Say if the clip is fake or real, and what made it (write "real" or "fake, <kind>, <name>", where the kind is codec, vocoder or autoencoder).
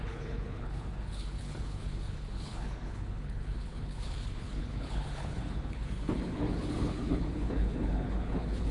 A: fake, codec, HILCodec